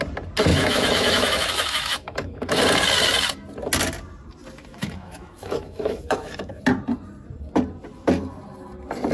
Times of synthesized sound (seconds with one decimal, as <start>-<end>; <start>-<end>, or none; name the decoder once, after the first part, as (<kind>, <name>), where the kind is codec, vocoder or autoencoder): 0.5-2.6 (autoencoder, DAC-VAE); 4.7-6.6

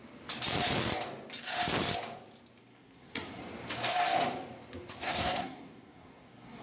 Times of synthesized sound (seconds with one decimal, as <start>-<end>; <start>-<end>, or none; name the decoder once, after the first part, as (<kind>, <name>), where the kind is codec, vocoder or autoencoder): 2.6-3.4 (codec, SNAC); 5.0-6.6

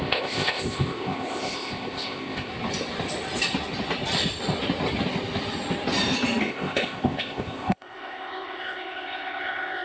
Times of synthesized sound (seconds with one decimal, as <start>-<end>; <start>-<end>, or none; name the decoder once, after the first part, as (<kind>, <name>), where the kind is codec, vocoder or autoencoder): 0.0-2.5 (codec, ZipCodec); 6.4-9.8

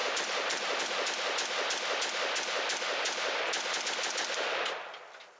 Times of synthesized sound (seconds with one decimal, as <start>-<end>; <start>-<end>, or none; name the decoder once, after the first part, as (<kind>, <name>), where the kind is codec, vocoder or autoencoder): 0.0-0.8 (vocoder, BigVGAN v2)